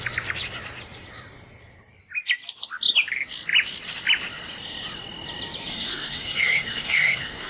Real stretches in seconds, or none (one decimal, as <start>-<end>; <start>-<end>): 0.0-5.7